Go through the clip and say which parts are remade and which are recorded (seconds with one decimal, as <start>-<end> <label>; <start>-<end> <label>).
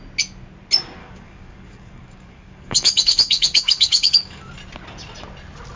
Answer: 0.0-1.0 recorded; 1.0-4.5 remade; 4.5-5.8 recorded